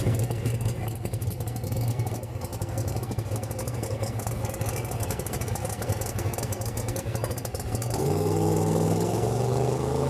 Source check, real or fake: fake